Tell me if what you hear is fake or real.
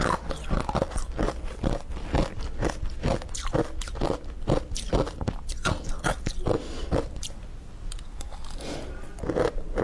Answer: real